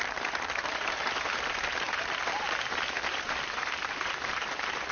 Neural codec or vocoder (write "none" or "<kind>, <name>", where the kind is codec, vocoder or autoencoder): vocoder, BigVGAN v2